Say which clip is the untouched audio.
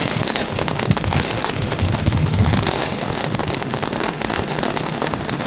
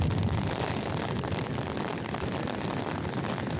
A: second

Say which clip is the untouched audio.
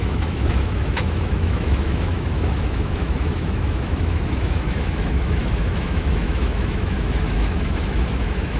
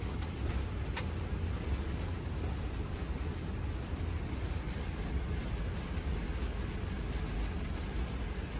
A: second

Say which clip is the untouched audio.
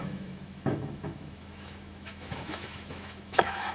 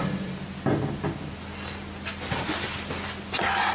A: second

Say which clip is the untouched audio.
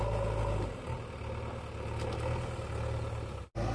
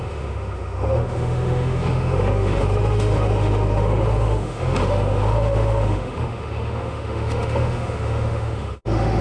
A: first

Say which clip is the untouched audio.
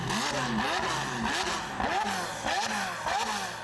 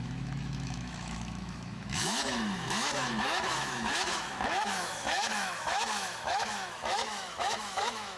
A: first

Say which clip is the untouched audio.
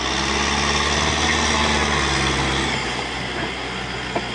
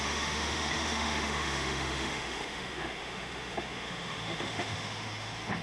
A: first